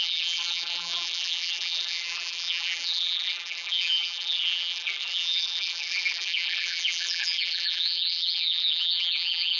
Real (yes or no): no